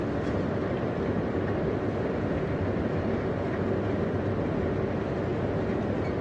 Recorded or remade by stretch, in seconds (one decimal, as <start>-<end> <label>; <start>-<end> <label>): 0.0-6.2 recorded

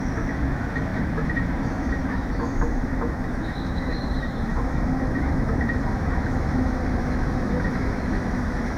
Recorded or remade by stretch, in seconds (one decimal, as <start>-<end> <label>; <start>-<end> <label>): 0.0-8.8 remade

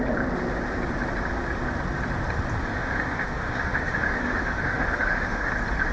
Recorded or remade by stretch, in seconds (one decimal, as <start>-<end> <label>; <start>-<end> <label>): 0.0-2.6 recorded; 2.6-5.5 remade; 5.5-5.9 recorded

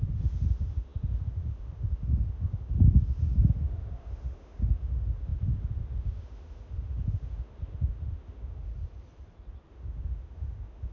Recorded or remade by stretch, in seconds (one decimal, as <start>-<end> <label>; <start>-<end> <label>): 0.0-8.7 remade; 8.7-9.7 recorded; 9.7-10.9 remade